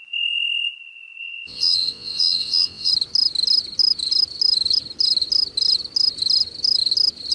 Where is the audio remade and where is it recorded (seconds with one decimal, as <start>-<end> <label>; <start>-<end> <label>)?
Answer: 0.0-1.2 recorded; 1.2-2.9 remade; 2.9-7.3 recorded